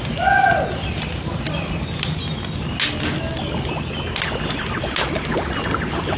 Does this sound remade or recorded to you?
recorded